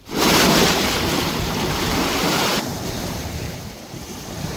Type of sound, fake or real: fake